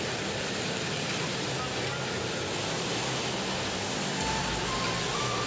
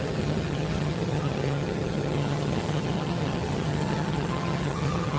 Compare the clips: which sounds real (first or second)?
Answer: first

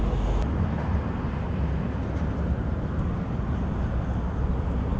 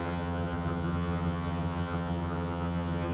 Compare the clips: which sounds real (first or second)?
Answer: first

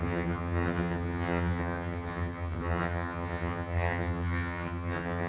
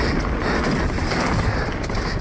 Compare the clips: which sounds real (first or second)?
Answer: second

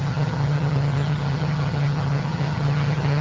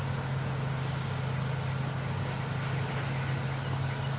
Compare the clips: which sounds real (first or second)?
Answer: second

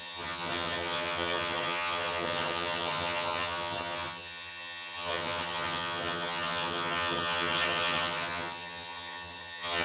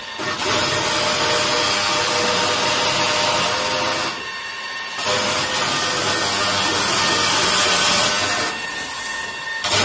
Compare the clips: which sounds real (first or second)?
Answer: second